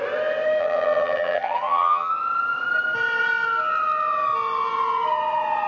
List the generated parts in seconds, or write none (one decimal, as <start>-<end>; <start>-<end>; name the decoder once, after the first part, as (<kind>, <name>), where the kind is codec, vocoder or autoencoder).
0.6-2.1 (vocoder, HiFi-GAN)